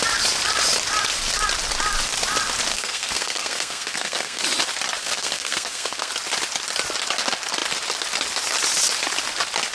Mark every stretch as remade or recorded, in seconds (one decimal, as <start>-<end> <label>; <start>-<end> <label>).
0.0-2.7 recorded; 2.7-4.4 remade; 4.4-5.0 recorded; 5.0-6.1 remade; 6.1-9.7 recorded